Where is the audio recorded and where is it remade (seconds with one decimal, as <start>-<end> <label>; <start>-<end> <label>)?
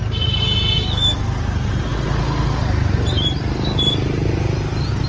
0.0-5.1 recorded